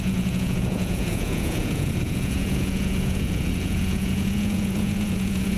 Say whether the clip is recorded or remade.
remade